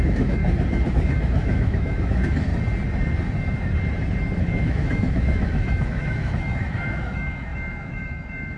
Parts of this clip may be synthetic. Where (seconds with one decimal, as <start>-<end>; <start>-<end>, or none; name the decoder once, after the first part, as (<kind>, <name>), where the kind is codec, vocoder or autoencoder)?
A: 0.0-0.4 (autoencoder, DAC-VAE); 0.9-2.5; 4.4-8.6